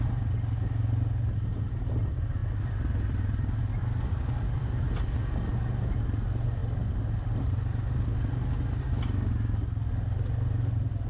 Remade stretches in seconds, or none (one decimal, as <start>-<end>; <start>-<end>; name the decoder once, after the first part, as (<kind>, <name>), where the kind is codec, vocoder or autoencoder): none